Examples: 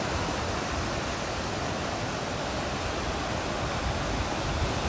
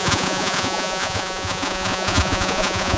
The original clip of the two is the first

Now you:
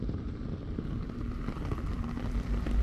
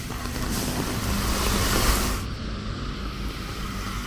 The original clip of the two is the second